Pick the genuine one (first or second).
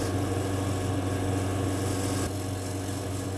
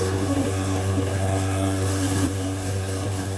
first